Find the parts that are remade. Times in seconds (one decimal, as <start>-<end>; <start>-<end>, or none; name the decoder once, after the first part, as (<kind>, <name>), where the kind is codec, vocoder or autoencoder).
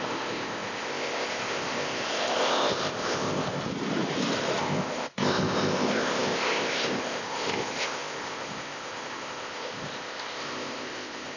0.0-3.6 (codec, ZipCodec); 4.6-11.4